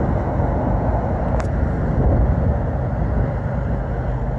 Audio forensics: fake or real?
real